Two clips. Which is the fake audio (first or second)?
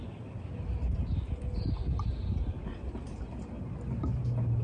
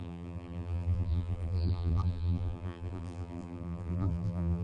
second